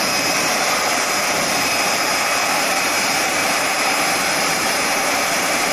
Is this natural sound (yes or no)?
no